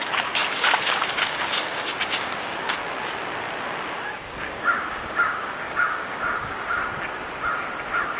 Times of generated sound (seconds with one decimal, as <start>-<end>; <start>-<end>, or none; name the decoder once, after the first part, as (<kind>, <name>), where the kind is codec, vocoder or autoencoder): 0.0-2.8 (codec, DAC); 3.9-6.8